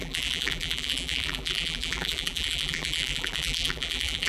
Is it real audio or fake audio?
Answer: fake